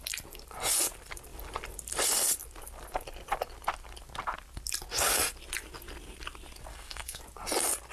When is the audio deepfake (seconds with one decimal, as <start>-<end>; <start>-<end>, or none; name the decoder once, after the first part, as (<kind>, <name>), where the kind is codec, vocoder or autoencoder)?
6.7-7.2 (codec, SNAC)